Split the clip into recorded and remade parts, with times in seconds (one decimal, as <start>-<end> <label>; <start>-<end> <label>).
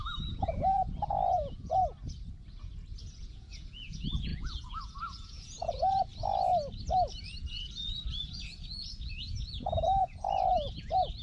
0.0-1.8 remade; 1.8-3.0 recorded; 3.0-6.1 remade; 6.1-7.5 recorded; 7.5-11.2 remade